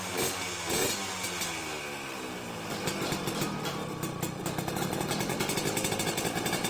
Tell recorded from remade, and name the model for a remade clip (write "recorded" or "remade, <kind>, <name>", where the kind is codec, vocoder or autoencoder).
recorded